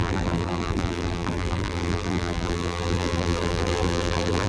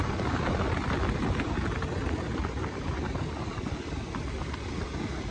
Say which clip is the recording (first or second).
second